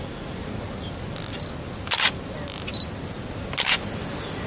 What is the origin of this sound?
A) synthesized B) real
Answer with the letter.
B